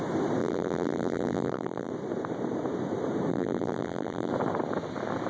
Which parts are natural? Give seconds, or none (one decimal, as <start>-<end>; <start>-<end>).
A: 0.0-0.4; 1.9-3.3; 4.3-5.3